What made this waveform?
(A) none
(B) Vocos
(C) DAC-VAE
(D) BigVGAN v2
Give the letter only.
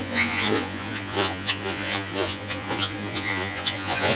B